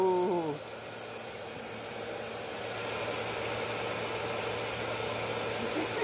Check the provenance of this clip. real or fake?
real